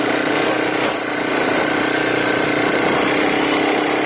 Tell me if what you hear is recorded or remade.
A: recorded